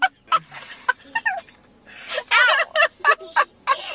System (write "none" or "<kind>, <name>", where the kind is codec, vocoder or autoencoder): none